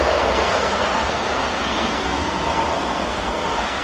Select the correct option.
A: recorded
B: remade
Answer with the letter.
B